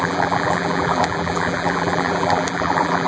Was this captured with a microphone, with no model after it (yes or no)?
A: no